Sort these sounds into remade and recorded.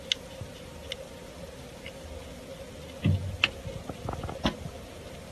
recorded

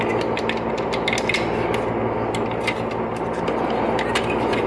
recorded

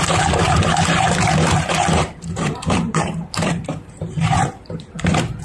remade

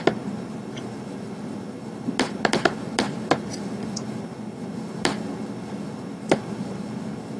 recorded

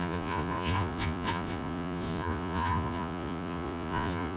remade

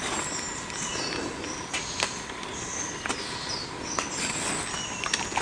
recorded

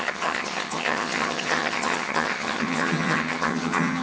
remade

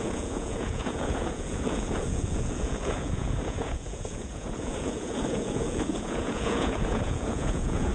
remade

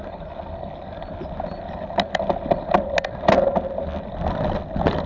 recorded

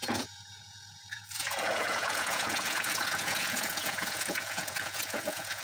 remade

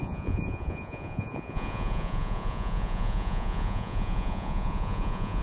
remade